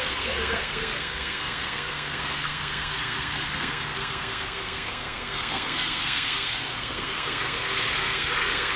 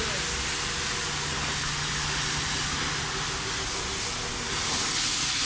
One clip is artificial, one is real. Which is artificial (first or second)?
first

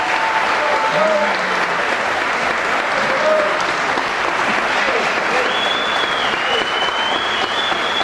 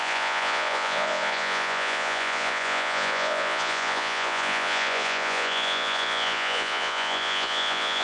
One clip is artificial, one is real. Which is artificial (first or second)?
second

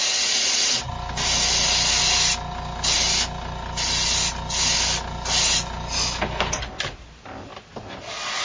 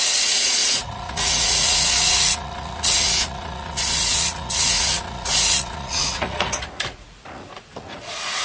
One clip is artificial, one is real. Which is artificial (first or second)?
second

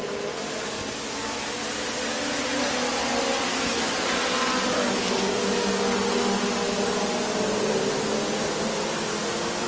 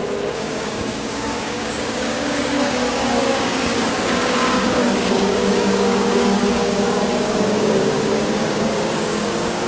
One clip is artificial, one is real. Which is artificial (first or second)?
second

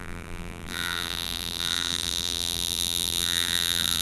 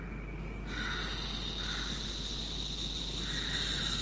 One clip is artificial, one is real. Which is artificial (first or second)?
first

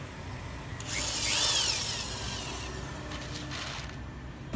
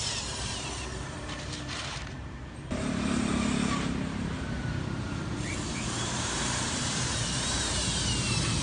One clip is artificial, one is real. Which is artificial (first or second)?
second